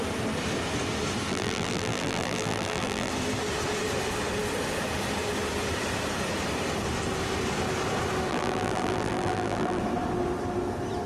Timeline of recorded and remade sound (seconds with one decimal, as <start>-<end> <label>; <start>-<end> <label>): 0.0-1.3 recorded; 1.3-3.1 remade; 3.1-8.3 recorded; 8.3-9.8 remade; 9.8-11.1 recorded